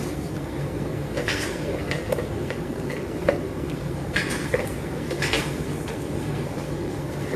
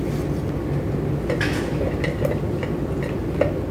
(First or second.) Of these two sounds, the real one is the second